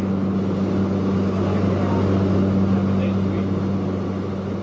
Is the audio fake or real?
real